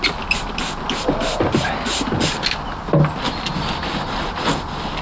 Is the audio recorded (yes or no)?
yes